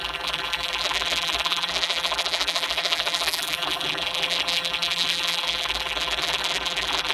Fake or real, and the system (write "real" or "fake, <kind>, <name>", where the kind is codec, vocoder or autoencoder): fake, vocoder, BigVGAN v2